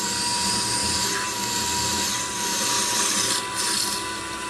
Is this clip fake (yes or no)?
no